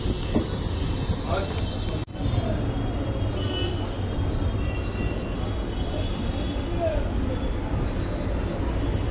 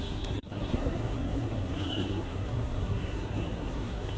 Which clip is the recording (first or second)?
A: first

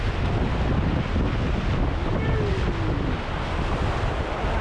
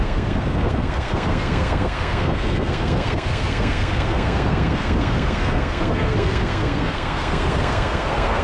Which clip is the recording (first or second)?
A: first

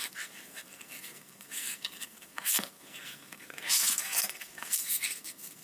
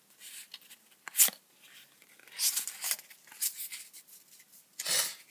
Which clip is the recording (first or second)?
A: second